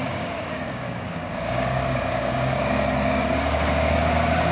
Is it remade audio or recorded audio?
remade